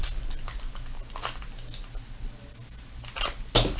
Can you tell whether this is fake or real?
real